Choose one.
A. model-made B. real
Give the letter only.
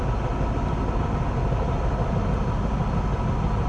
B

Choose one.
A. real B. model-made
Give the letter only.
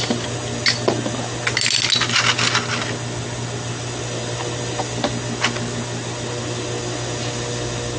A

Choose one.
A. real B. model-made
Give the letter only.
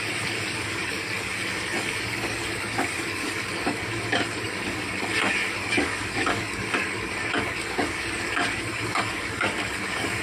B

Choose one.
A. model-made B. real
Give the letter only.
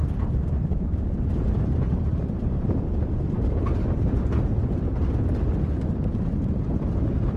B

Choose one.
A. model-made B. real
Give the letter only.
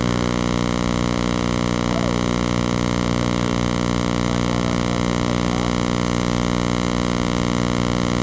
B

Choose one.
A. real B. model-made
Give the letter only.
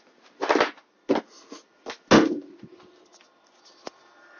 A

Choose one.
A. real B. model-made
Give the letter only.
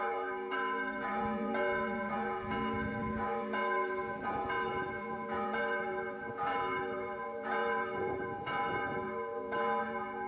B